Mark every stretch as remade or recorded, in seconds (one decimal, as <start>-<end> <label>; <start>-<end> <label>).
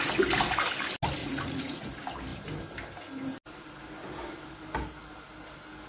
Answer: 0.0-1.2 recorded; 1.2-1.9 remade; 1.9-5.9 recorded